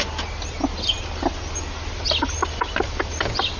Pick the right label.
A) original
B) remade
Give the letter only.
A